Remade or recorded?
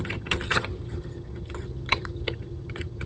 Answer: remade